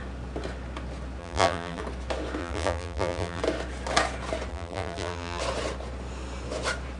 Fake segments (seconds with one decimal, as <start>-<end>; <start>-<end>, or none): 1.2-1.8; 2.4-3.4; 4.5-5.4